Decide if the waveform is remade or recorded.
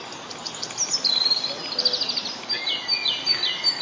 recorded